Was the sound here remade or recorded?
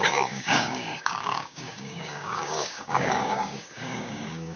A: remade